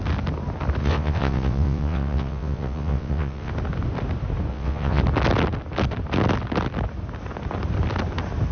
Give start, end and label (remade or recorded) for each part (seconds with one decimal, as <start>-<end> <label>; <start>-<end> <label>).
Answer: 0.0-0.8 recorded; 0.8-3.5 remade; 3.5-4.5 recorded; 4.5-5.0 remade; 5.0-8.5 recorded